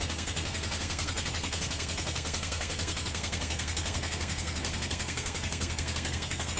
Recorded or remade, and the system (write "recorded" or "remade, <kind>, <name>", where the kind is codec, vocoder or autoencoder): remade, codec, SNAC